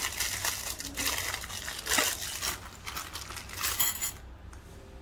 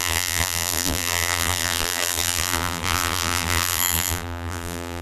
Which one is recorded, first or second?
first